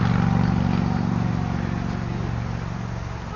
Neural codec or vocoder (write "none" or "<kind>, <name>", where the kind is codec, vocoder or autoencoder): none